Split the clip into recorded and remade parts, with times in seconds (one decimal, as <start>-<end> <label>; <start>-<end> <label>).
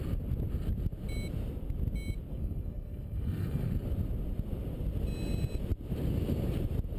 0.0-2.3 recorded; 2.3-3.7 remade; 3.7-7.0 recorded